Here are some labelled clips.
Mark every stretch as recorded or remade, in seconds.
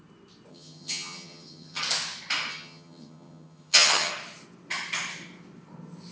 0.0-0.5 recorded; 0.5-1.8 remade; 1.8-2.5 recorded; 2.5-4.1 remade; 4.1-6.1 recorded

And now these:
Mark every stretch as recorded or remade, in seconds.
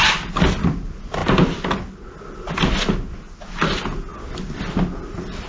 0.0-5.5 recorded